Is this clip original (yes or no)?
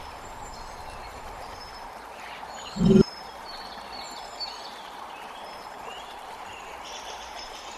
no